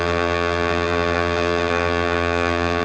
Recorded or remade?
remade